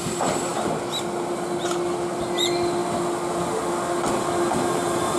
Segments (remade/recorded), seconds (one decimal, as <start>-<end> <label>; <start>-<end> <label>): 0.0-5.2 recorded